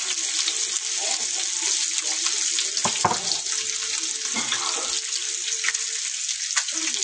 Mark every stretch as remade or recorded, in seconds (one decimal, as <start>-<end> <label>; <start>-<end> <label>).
0.0-7.0 recorded